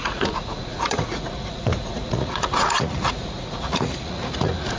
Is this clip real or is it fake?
fake